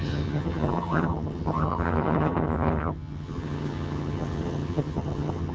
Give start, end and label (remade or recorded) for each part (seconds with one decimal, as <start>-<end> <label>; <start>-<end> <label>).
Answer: 0.0-5.5 remade